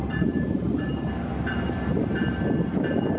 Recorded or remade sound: recorded